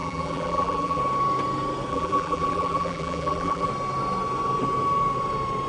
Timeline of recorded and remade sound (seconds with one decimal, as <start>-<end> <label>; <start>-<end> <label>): 0.0-1.0 remade; 1.0-1.9 recorded; 1.9-3.7 remade; 3.7-5.7 recorded